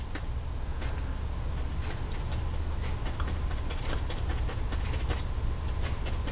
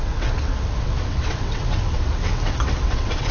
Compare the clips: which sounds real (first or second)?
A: first